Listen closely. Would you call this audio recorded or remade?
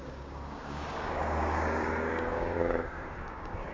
remade